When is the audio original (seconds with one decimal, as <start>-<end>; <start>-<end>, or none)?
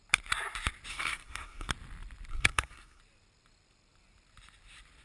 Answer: 0.0-0.9; 1.7-2.3; 3.0-5.0